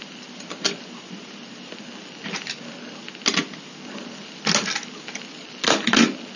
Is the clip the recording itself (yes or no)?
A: yes